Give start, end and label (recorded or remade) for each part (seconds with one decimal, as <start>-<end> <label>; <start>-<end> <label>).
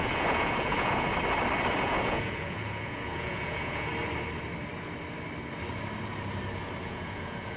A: 0.0-1.1 remade; 1.1-1.8 recorded; 1.8-3.9 remade; 3.9-6.8 recorded; 6.8-7.6 remade